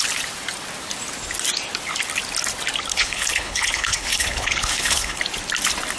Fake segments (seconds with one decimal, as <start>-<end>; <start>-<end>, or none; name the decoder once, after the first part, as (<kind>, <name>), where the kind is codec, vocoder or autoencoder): 2.9-5.2 (codec, HILCodec)